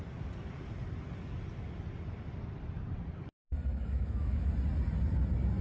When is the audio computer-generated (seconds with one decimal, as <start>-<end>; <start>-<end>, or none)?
3.7-4.5